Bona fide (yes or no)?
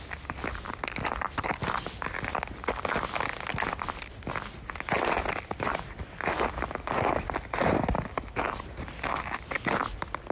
yes